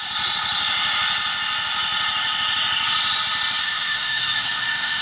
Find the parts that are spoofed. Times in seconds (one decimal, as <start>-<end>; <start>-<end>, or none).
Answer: 3.6-5.0